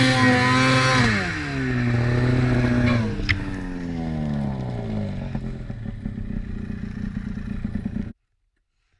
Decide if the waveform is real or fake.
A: real